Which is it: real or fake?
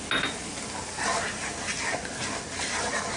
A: real